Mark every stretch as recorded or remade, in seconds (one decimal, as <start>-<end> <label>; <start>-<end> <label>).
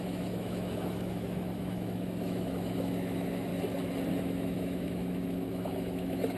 0.0-3.5 remade; 3.5-4.2 recorded; 4.2-6.4 remade